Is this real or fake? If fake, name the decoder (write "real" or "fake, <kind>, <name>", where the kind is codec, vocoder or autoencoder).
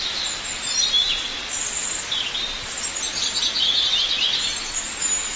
real